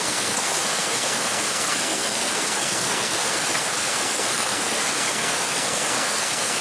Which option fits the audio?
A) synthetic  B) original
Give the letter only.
A